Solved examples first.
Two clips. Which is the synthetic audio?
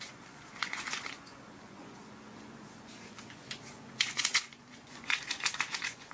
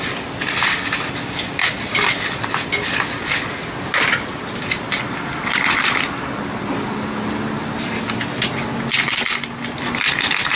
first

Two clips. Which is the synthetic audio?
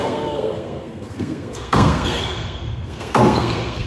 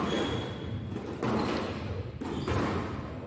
first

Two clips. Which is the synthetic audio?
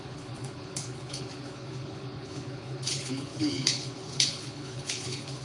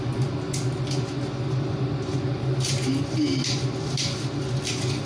first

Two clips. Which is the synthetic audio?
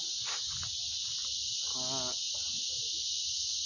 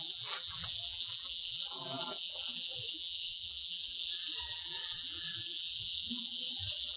second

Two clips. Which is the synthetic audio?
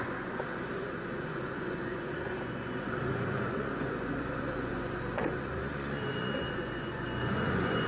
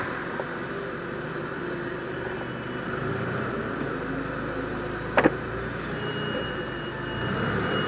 first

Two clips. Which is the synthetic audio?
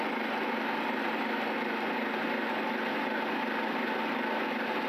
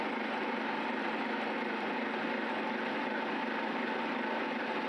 second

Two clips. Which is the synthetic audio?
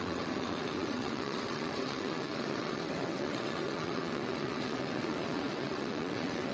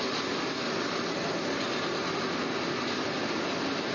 first